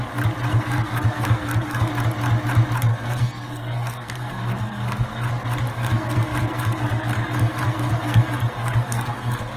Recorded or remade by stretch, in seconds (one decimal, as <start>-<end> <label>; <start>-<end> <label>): 0.0-0.5 recorded; 0.5-1.9 remade; 1.9-2.9 recorded; 2.9-5.3 remade; 5.3-5.7 recorded; 5.7-9.6 remade